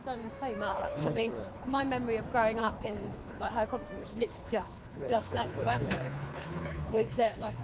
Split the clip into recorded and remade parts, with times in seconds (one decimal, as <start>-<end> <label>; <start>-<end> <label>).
0.0-0.7 recorded; 0.7-1.8 remade; 1.8-2.6 recorded; 2.6-3.5 remade; 3.5-4.0 recorded; 4.0-7.6 remade